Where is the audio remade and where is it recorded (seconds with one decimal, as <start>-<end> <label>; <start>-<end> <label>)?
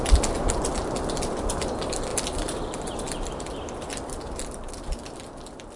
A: 0.0-2.1 recorded; 2.1-4.7 remade; 4.7-5.8 recorded